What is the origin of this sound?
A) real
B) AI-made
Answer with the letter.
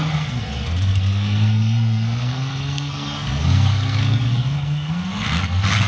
B